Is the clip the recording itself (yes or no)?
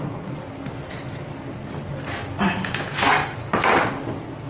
yes